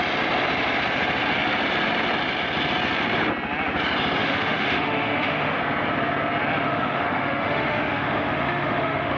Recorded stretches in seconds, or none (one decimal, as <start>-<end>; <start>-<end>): 0.0-4.2; 5.6-6.6

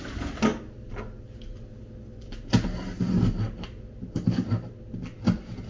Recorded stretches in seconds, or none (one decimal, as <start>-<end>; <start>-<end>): 0.0-5.7

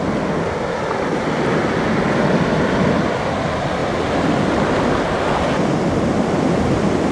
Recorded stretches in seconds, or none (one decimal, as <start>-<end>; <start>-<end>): 0.0-7.1

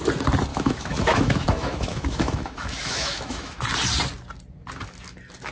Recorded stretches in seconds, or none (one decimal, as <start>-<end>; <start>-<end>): 0.0-0.5; 3.6-5.5

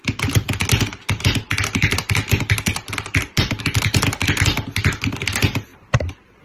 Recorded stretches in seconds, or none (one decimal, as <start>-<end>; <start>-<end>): 0.0-6.4

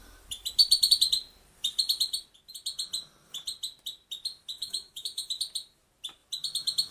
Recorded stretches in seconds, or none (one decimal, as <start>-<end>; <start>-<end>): 0.0-4.5; 5.3-6.9

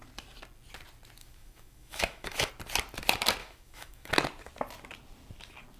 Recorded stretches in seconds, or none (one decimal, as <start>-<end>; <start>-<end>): 0.0-1.2; 2.5-3.4; 4.1-5.8

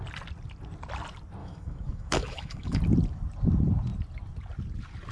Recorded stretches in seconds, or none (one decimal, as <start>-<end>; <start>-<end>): 0.0-1.4; 2.8-5.1